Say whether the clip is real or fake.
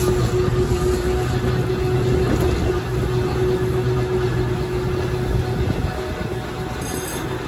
real